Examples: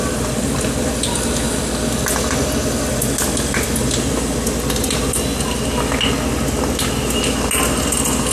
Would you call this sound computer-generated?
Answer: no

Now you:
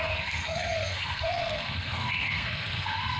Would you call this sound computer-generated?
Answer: yes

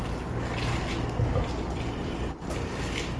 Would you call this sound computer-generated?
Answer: no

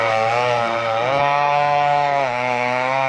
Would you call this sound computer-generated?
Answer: yes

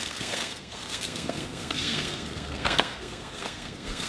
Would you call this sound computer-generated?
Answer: yes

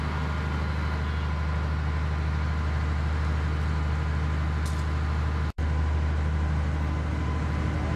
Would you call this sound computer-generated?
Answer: no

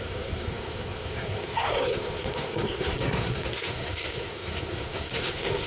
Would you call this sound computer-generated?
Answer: yes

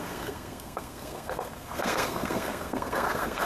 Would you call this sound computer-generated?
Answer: yes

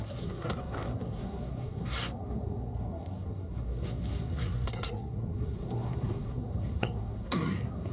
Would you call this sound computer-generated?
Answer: yes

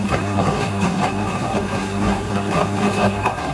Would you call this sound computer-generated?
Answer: yes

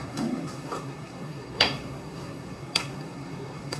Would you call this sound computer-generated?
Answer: yes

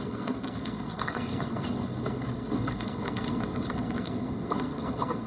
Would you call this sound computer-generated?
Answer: yes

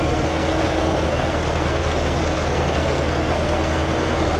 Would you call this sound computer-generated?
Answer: yes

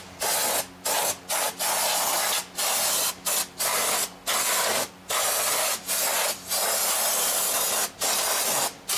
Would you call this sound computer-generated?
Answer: no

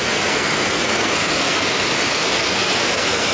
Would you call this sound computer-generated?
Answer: yes